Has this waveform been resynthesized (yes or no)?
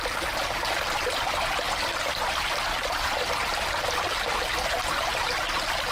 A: no